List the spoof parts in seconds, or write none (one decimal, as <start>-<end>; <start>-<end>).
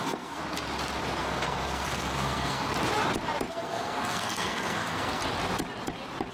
0.0-0.4; 1.2-2.7; 3.5-5.2